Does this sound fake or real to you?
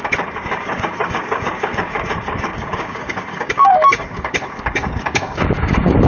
fake